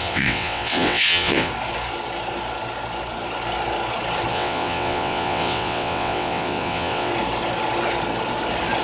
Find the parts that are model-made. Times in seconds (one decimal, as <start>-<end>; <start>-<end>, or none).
0.0-1.5; 4.3-7.1